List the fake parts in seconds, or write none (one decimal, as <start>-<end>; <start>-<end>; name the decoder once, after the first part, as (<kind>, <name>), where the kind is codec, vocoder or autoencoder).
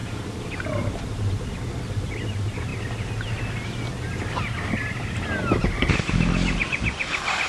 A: 0.0-0.7 (vocoder, BigVGAN v2)